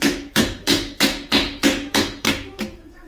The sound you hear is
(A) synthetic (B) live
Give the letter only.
A